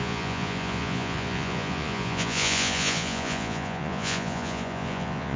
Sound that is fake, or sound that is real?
fake